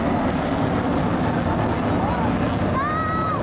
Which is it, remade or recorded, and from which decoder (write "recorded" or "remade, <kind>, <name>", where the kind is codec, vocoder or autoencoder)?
recorded